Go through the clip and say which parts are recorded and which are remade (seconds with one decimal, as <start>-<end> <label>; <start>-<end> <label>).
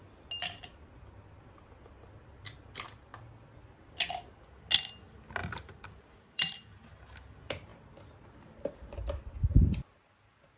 0.0-5.4 recorded; 5.4-6.9 remade; 6.9-10.6 recorded